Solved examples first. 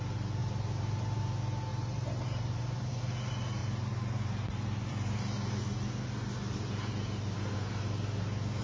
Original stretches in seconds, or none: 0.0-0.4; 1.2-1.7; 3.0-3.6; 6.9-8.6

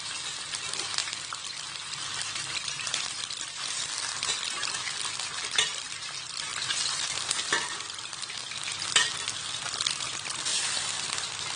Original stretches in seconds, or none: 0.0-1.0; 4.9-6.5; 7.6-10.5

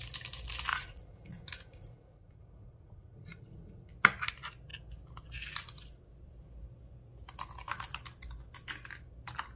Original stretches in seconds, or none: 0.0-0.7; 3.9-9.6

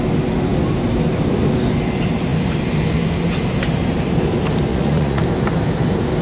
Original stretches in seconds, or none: 0.0-4.7; 5.2-6.2

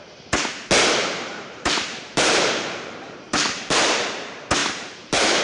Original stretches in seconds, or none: 0.0-1.0; 4.1-4.6

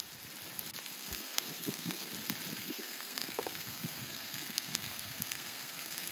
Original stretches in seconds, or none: 0.0-1.0; 2.1-2.6